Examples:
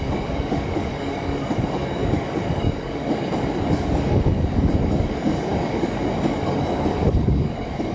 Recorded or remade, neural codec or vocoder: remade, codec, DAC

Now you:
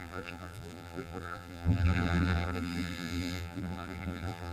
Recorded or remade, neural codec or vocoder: remade, vocoder, BigVGAN v2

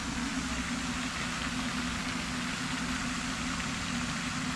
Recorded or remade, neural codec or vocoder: recorded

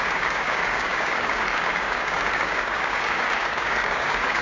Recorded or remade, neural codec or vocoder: remade, codec, DAC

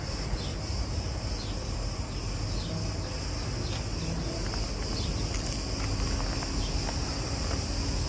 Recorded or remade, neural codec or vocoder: recorded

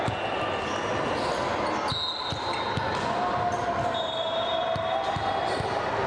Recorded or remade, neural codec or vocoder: recorded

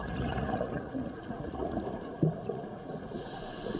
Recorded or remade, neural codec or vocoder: remade, vocoder, Vocos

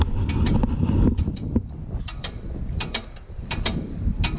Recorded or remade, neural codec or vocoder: recorded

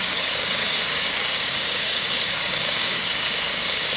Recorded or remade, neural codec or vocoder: remade, codec, DAC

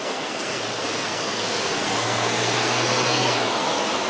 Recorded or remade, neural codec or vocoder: remade, codec, SNAC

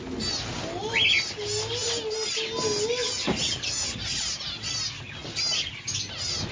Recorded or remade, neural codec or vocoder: recorded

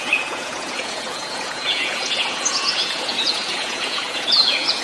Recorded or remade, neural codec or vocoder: remade, vocoder, Vocos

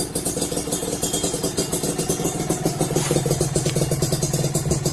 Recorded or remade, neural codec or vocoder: recorded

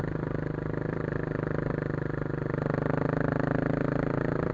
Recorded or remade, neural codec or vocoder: recorded